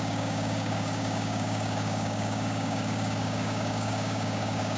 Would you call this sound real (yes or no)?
no